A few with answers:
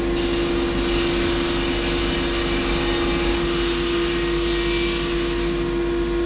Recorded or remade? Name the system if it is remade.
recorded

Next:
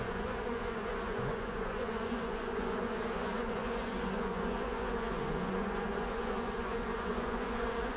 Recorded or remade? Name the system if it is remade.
remade, vocoder, Vocos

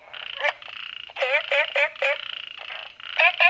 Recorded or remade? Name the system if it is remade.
recorded